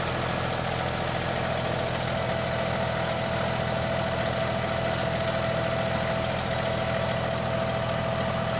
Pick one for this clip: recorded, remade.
recorded